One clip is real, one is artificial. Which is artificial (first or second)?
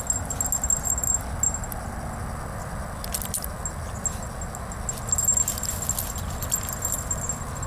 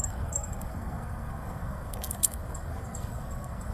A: second